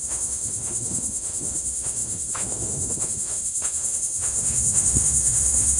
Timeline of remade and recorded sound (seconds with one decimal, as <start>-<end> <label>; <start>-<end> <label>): 0.0-5.8 remade